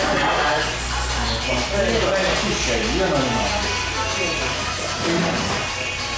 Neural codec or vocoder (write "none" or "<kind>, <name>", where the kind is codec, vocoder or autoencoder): none